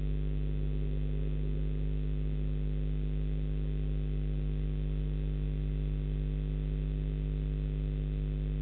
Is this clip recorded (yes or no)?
yes